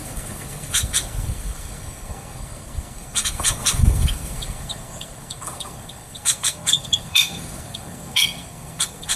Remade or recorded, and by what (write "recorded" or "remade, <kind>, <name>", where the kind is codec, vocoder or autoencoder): remade, codec, SNAC